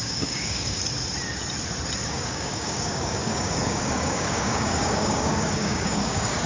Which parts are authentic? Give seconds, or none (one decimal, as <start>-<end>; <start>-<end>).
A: 0.8-2.0